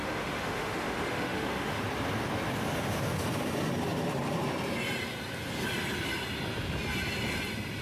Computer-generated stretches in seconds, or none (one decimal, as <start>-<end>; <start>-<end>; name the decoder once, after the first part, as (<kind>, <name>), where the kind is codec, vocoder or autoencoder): 0.0-1.8 (autoencoder, DAC-VAE)